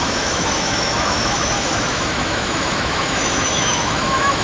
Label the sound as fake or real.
fake